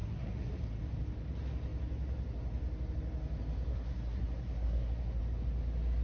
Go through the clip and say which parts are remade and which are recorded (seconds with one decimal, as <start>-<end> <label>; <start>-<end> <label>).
0.0-0.6 remade; 0.6-3.7 recorded; 3.7-5.2 remade; 5.2-6.0 recorded